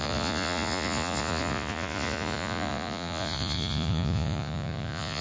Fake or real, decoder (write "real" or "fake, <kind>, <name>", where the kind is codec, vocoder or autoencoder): fake, vocoder, Vocos